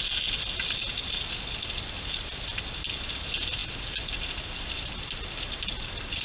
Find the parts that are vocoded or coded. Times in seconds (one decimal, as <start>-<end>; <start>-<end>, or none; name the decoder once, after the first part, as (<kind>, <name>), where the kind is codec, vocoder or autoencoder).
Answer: none